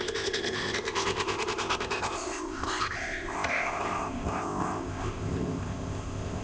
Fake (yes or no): yes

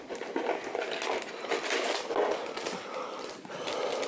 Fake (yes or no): no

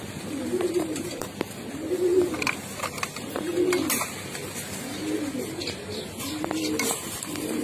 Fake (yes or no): yes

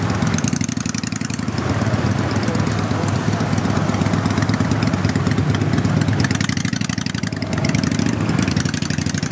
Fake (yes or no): no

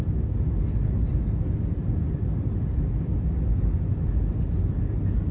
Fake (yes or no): no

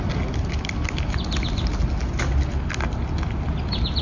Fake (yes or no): no